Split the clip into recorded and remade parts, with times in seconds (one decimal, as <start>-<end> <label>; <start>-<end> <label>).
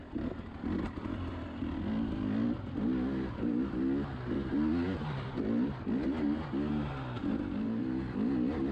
0.0-5.0 recorded; 5.0-6.9 remade; 6.9-8.7 recorded